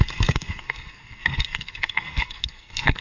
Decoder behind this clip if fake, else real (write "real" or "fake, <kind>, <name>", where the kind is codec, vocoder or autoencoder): fake, codec, SNAC